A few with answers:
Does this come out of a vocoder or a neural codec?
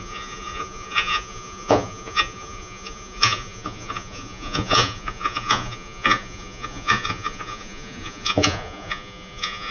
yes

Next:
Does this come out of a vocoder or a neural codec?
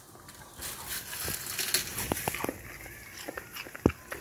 no